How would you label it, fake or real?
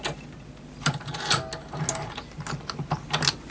real